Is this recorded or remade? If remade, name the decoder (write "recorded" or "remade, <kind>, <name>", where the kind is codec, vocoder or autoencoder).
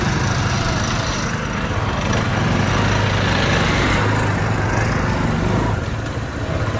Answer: recorded